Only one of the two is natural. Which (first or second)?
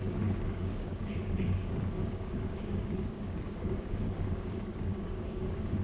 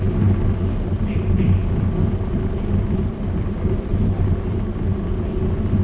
second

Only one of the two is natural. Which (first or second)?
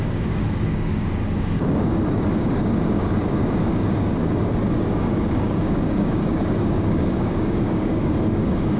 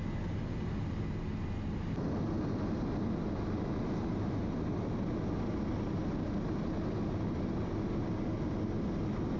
second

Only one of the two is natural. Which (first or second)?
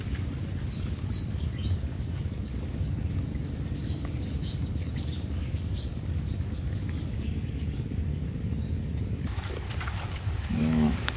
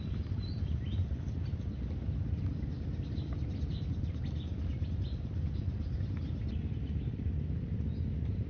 second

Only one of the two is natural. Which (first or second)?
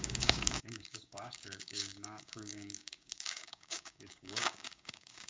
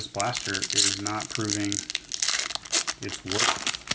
second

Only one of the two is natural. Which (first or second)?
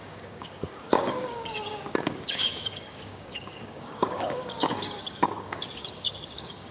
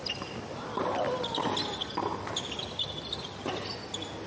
second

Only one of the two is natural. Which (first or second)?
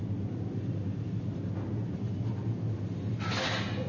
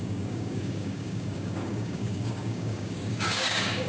first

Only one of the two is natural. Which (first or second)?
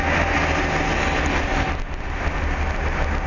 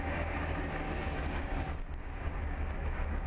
first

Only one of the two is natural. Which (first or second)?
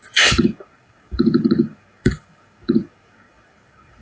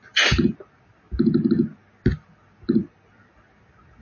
second